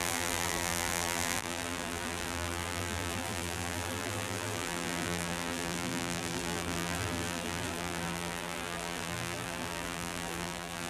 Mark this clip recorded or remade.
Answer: remade